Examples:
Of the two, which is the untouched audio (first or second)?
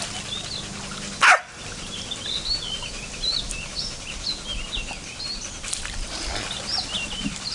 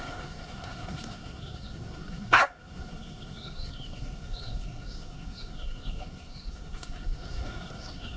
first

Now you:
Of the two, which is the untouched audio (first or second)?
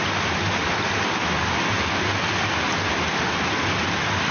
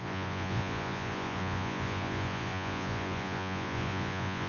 first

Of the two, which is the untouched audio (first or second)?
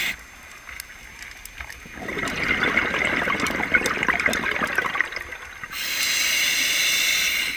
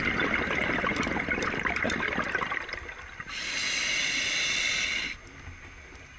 first